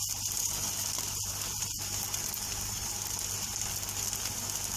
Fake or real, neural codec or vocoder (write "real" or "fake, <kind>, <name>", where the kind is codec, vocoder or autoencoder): real